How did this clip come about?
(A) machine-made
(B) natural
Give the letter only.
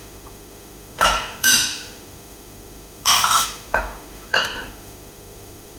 A